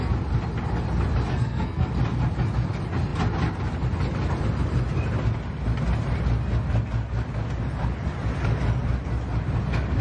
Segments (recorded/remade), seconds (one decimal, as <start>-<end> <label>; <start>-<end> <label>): 0.0-1.3 recorded; 1.3-1.9 remade; 1.9-10.0 recorded